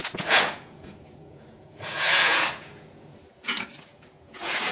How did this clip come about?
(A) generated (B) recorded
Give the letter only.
A